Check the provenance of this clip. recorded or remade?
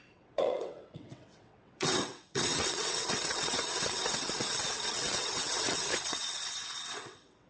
remade